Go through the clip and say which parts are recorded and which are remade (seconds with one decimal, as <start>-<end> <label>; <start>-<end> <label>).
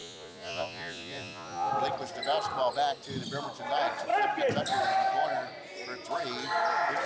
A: 0.0-1.7 remade; 1.7-7.1 recorded